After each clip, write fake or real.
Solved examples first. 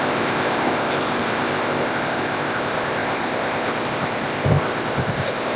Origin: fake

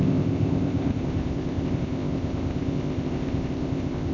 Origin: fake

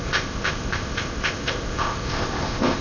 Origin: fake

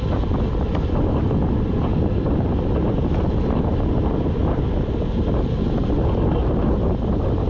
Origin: real